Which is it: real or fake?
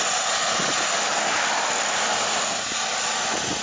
real